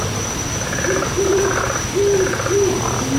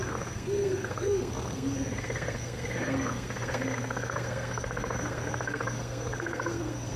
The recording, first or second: first